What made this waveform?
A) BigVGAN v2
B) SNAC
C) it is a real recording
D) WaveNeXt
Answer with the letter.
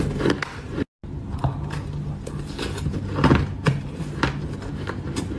C